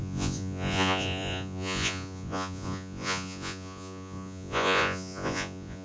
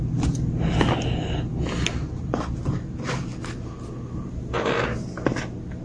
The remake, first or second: first